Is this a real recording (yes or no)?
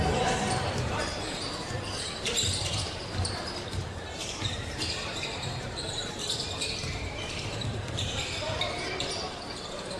no